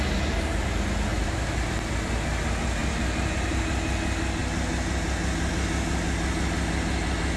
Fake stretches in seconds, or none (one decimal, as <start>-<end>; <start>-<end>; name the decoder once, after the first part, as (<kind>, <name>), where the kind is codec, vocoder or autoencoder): 1.1-1.7 (vocoder, BigVGAN v2); 2.8-3.6